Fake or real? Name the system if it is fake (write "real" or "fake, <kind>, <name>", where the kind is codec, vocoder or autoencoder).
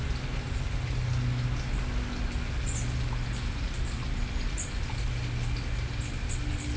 real